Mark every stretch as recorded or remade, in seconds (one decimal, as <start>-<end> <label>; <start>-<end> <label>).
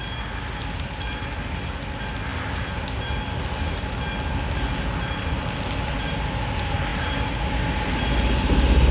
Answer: 0.0-8.9 recorded